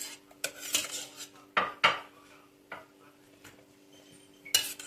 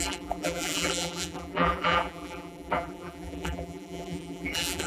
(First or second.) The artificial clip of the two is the second